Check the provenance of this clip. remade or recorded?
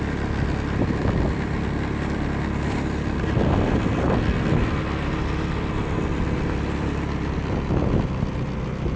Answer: recorded